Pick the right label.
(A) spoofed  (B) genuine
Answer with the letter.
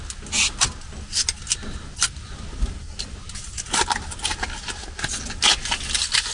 B